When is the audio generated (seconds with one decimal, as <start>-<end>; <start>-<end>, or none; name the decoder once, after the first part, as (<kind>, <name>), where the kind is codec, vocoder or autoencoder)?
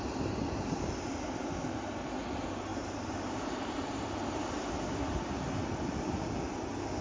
2.7-4.7 (vocoder, BigVGAN v2)